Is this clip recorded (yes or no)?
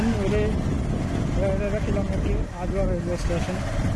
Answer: yes